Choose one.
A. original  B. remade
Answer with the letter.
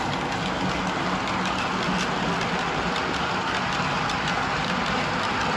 A